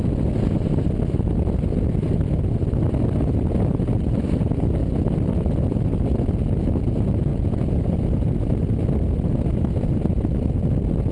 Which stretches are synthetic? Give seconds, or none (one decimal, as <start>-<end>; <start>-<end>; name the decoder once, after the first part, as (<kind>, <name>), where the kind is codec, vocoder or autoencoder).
none